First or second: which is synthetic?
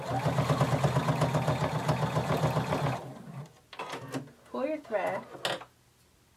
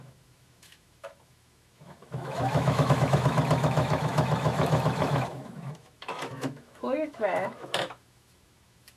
second